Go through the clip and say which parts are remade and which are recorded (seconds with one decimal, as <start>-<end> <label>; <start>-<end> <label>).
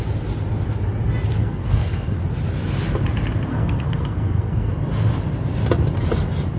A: 0.0-1.4 recorded; 1.4-2.2 remade; 2.2-3.5 recorded; 3.5-4.7 remade; 4.7-6.6 recorded